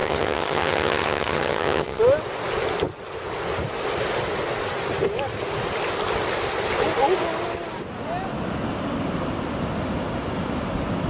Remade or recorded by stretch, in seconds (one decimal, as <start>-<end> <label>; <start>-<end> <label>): 0.0-2.0 remade; 2.0-11.1 recorded